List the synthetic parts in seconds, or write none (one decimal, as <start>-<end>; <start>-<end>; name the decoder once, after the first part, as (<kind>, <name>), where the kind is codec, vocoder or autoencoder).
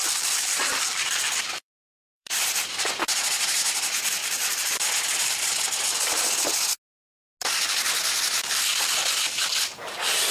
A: 0.0-2.5 (vocoder, BigVGAN v2); 4.2-5.5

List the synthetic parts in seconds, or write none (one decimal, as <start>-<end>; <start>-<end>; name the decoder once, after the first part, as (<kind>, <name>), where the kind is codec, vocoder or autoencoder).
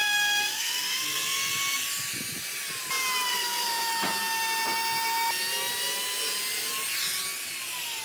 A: 0.0-1.5 (codec, SNAC); 3.3-3.9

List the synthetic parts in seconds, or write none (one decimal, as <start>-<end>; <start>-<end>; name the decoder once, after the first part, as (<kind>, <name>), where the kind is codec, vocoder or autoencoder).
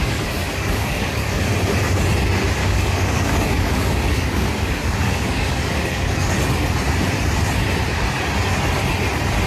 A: 0.0-1.5 (codec, DAC); 2.6-6.3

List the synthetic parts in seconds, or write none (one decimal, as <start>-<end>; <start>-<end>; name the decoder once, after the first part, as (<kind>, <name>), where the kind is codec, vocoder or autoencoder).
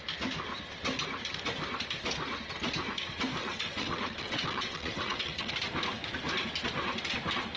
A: 3.4-5.5 (vocoder, WaveNeXt)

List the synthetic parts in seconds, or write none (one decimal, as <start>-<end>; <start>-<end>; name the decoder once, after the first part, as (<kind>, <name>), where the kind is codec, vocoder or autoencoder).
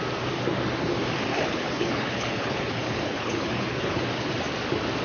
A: 1.3-4.3 (codec, HILCodec)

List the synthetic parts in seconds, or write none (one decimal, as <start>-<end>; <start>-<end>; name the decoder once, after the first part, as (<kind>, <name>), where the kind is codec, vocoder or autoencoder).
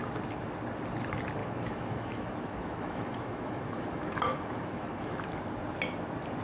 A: 1.4-5.2 (autoencoder, DAC-VAE)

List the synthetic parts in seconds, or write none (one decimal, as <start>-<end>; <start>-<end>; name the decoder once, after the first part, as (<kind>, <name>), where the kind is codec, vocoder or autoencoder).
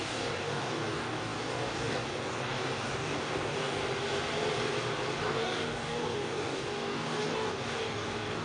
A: 0.0-3.8 (codec, DAC); 5.2-8.4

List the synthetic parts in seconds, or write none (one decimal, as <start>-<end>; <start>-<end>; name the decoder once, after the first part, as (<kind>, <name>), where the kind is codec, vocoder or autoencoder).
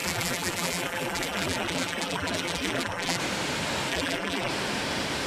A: 0.0-3.2 (vocoder, BigVGAN v2); 3.9-4.5